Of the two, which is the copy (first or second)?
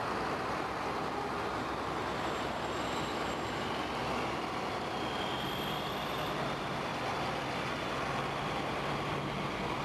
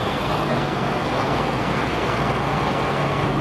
second